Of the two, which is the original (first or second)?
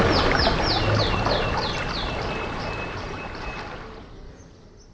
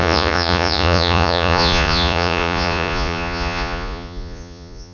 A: first